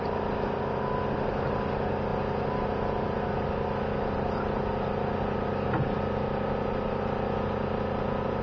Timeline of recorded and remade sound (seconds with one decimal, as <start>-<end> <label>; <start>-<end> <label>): 0.0-8.4 recorded